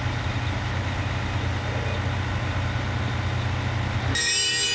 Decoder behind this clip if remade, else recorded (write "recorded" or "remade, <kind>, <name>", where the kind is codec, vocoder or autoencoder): recorded